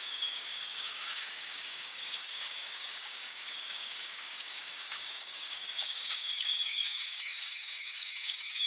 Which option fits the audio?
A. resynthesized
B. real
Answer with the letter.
A